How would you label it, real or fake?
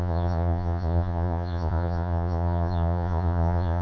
fake